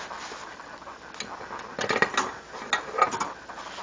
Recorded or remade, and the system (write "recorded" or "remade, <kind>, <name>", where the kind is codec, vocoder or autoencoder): recorded